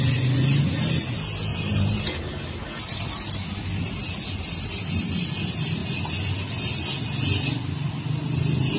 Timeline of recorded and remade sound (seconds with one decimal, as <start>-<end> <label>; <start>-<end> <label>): 0.0-1.5 recorded; 1.5-2.2 remade; 2.2-8.8 recorded